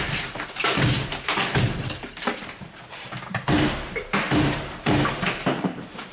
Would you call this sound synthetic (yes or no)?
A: yes